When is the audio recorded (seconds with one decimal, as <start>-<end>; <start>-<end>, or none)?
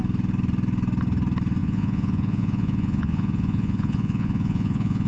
0.0-1.6